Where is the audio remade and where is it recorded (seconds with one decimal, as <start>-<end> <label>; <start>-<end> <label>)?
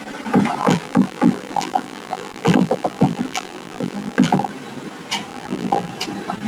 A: 0.0-0.6 recorded; 0.6-4.5 remade; 4.5-5.3 recorded; 5.3-5.9 remade; 5.9-6.5 recorded